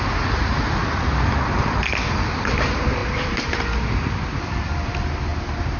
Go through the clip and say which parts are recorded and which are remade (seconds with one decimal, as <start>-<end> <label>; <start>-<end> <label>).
0.0-5.3 remade; 5.3-5.8 recorded